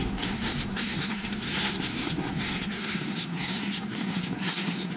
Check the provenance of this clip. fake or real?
fake